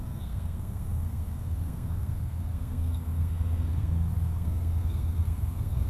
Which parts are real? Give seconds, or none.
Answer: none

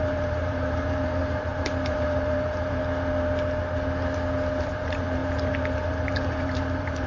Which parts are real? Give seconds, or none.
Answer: 2.8-4.6

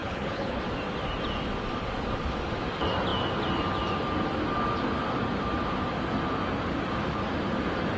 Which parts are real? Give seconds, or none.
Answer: 0.6-8.0

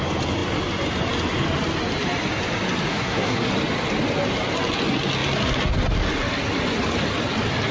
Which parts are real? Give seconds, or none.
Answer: 0.0-2.9; 3.5-7.7

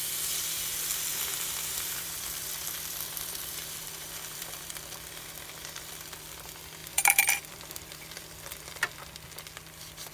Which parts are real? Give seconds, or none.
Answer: 0.0-1.1; 6.3-6.8; 9.0-10.1